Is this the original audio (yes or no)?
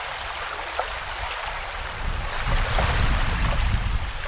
yes